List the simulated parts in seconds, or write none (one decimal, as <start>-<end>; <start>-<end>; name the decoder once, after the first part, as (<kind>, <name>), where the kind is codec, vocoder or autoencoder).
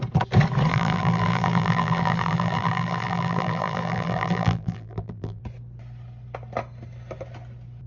0.7-5.4 (vocoder, BigVGAN v2)